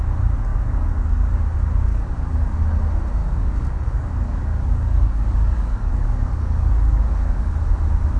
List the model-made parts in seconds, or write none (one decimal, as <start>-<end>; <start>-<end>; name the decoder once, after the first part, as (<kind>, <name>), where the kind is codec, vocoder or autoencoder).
0.5-1.4 (codec, DAC); 1.9-2.6; 3.2-7.6